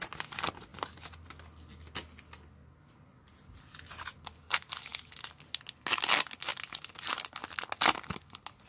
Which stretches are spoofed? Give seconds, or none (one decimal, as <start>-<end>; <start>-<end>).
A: none